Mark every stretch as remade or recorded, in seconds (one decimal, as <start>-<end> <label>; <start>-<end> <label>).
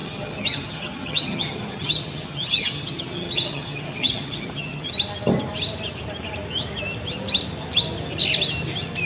0.0-4.9 remade; 4.9-9.1 recorded